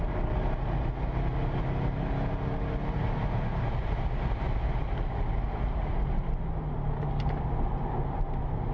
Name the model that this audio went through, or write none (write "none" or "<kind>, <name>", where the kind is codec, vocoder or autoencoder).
none